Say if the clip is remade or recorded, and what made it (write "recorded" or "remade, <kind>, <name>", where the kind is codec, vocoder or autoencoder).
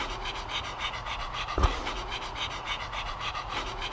remade, vocoder, Vocos